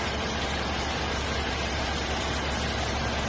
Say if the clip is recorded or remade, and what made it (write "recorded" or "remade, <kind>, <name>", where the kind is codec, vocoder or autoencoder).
recorded